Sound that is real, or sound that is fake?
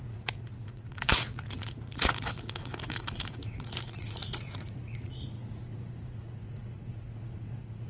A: fake